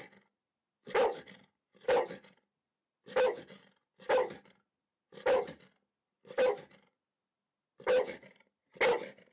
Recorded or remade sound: recorded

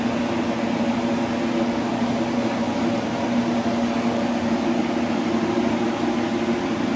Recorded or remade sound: recorded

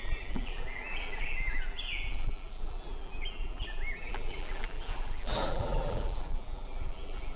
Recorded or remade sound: remade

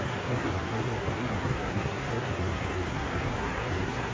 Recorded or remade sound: remade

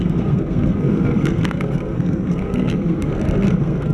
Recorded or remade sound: remade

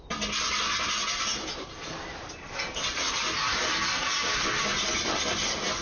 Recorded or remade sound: recorded